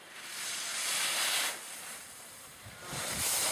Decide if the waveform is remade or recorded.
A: remade